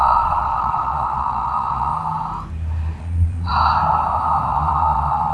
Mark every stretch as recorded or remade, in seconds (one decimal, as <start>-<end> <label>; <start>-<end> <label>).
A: 0.0-1.9 remade; 1.9-3.0 recorded; 3.0-3.5 remade; 3.5-4.5 recorded; 4.5-5.3 remade